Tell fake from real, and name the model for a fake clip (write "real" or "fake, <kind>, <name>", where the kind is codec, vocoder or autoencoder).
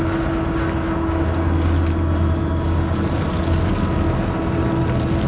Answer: real